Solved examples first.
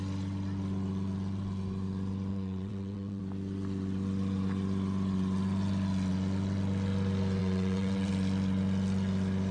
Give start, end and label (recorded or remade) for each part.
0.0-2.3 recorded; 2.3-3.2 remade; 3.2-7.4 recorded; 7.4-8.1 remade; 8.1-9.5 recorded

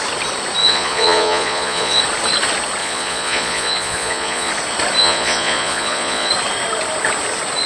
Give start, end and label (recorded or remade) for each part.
0.0-0.6 recorded; 0.6-2.0 remade; 2.0-2.8 recorded; 2.8-4.5 remade; 4.5-5.0 recorded; 5.0-6.3 remade; 6.3-7.7 recorded

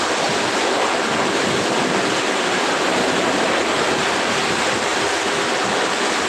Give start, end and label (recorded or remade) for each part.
0.0-6.3 recorded

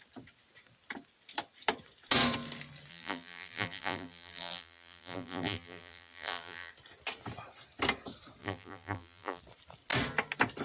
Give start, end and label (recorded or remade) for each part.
0.0-2.9 recorded; 2.9-6.7 remade; 6.7-8.4 recorded; 8.4-9.4 remade; 9.4-10.6 recorded

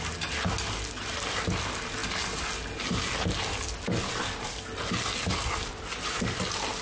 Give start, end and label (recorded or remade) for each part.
0.0-6.8 recorded